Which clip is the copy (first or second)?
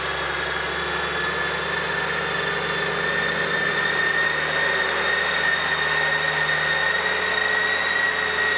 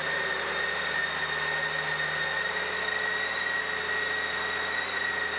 second